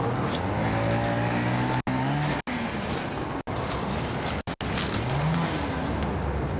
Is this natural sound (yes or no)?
yes